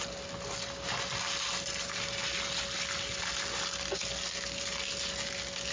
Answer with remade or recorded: recorded